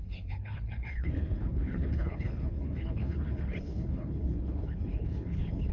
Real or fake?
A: fake